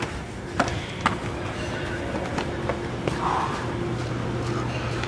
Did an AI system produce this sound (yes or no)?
no